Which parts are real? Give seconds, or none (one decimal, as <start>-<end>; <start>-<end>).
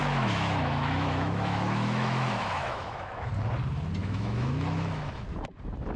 3.3-4.0; 5.2-6.0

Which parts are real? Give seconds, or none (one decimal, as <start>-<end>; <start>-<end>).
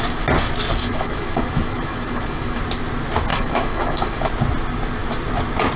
0.0-0.8; 2.6-3.3; 4.3-5.8